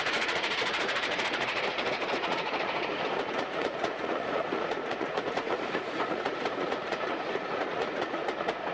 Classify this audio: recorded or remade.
remade